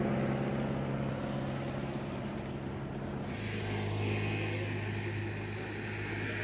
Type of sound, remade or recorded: recorded